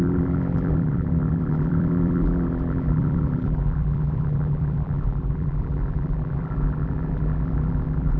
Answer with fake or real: fake